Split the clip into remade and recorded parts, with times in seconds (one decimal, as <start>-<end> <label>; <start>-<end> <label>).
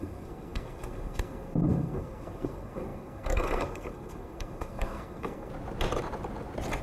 0.0-5.5 remade; 5.5-6.8 recorded